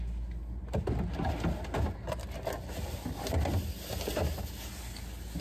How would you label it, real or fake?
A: real